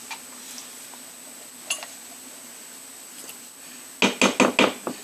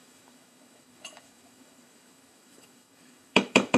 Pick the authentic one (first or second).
first